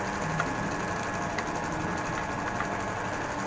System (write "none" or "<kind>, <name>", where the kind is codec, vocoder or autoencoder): none